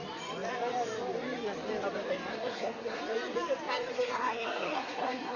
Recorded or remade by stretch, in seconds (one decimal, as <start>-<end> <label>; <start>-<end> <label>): 0.0-2.3 recorded; 2.3-3.0 remade; 3.0-3.9 recorded; 3.9-5.4 remade